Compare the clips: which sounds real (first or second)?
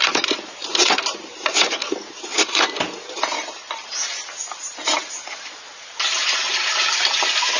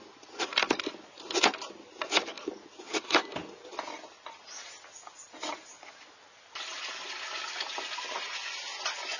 second